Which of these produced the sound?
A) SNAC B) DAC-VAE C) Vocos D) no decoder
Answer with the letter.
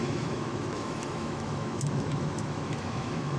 B